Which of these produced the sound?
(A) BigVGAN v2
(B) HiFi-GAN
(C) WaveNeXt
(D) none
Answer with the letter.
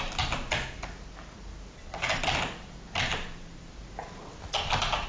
D